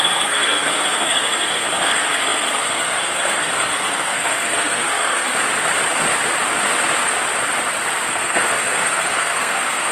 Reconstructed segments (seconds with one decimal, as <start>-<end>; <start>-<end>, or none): 0.0-5.3; 8.1-9.9